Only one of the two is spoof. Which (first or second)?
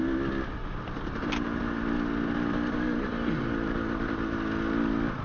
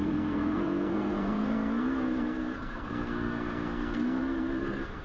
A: second